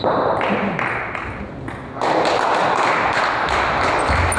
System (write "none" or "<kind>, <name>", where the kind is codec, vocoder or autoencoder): none